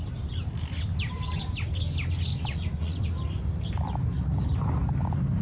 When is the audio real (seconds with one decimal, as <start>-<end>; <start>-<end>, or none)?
0.0-2.3; 3.0-5.4